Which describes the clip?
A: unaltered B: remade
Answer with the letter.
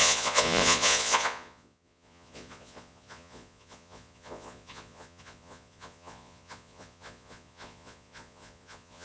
B